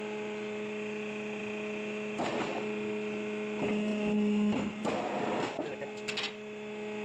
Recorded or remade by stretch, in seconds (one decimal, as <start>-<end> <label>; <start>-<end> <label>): 0.0-7.0 recorded